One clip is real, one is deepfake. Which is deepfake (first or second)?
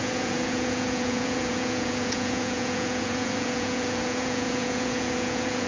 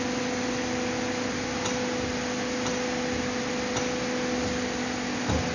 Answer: first